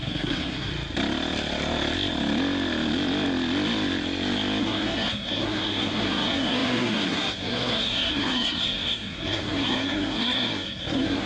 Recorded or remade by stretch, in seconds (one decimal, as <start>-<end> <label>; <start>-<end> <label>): 0.0-0.7 remade; 0.7-4.6 recorded; 4.6-11.3 remade